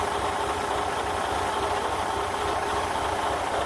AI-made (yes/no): no